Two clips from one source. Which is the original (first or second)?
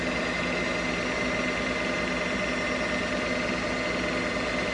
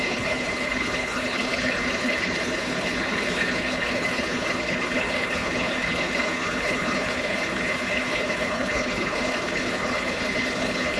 first